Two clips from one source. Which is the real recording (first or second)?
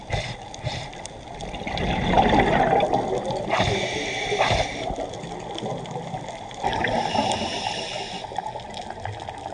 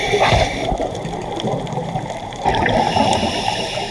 first